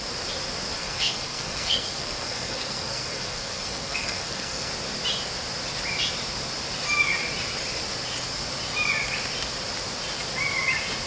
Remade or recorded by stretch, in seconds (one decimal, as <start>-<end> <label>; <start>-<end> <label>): 0.0-0.8 recorded; 0.8-4.7 remade; 4.7-11.1 recorded

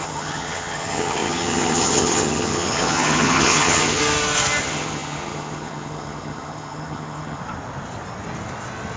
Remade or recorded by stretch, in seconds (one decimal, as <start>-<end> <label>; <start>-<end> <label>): 0.0-4.0 remade; 4.0-4.6 recorded; 4.6-7.4 remade; 7.4-9.0 recorded

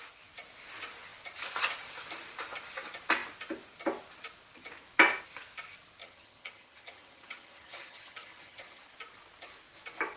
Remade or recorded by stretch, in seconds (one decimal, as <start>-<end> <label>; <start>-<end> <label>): 0.0-6.0 recorded; 6.0-8.8 remade; 8.8-10.2 recorded

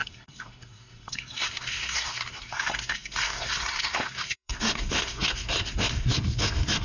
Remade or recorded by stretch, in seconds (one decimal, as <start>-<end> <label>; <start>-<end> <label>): 0.0-6.8 remade

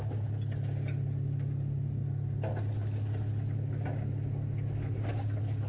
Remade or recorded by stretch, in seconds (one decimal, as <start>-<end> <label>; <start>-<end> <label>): 0.0-5.7 recorded

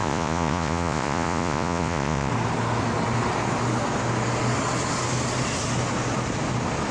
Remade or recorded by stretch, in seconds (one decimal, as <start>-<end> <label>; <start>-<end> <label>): 0.0-2.3 remade; 2.3-6.9 recorded